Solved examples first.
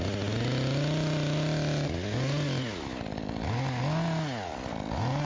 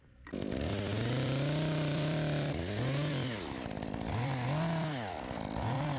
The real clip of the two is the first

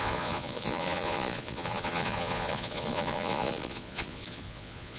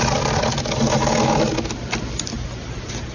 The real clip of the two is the second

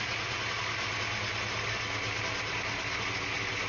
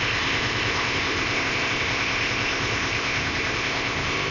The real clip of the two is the first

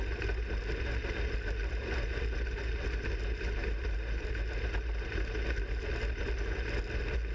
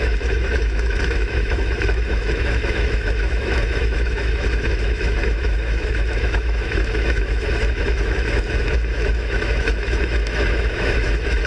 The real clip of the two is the first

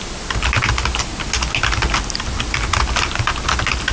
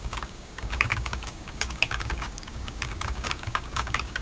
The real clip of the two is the first